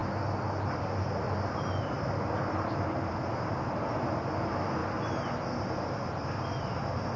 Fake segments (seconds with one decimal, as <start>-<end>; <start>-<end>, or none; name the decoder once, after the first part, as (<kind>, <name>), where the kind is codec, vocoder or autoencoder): none